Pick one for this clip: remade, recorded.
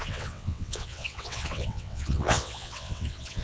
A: remade